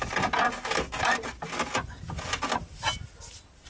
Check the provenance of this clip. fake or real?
real